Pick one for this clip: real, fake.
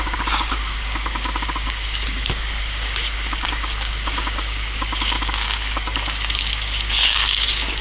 fake